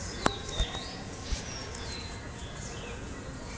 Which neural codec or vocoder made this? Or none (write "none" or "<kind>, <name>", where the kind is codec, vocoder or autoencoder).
vocoder, Vocos